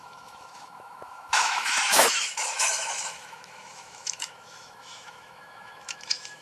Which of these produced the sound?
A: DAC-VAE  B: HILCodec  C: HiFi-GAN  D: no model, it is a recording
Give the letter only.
A